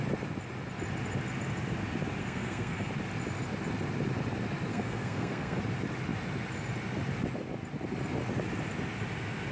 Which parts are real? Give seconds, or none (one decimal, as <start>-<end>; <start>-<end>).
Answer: 0.0-2.2; 2.9-4.7; 5.6-9.5